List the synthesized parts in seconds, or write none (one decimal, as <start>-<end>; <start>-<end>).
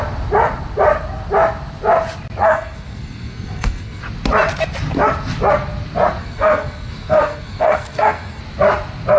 2.4-4.0; 6.2-8.4